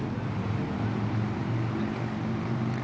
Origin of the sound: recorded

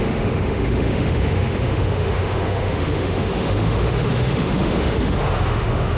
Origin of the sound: remade